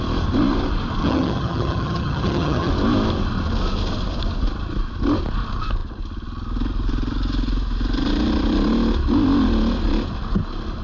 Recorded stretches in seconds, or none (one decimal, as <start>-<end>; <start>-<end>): 0.0-1.0; 2.7-10.8